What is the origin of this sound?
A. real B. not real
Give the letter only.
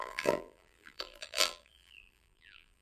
B